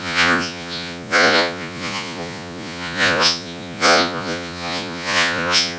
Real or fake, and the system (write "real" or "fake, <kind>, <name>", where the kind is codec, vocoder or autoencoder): fake, vocoder, Vocos